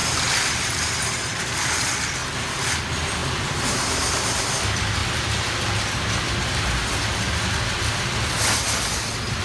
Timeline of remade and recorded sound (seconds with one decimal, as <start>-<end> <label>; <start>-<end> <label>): 0.0-0.5 recorded; 0.5-2.2 remade; 2.2-2.7 recorded; 2.7-3.2 remade; 3.2-4.2 recorded; 4.2-5.0 remade; 5.0-9.4 recorded

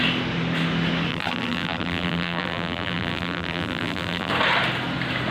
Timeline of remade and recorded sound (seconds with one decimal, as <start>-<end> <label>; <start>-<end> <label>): 0.0-1.1 recorded; 1.1-4.3 remade; 4.3-5.3 recorded

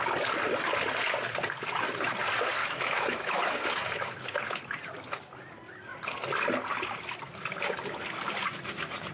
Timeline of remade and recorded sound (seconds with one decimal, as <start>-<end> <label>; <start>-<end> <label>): 0.0-2.6 recorded; 2.6-4.6 remade; 4.6-9.1 recorded

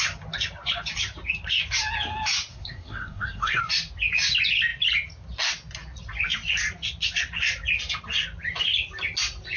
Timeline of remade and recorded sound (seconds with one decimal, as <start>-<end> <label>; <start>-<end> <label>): 0.0-2.5 recorded; 2.5-3.6 remade; 3.6-9.6 recorded

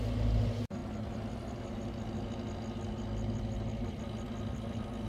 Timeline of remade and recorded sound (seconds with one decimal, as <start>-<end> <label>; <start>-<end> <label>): 0.0-5.1 recorded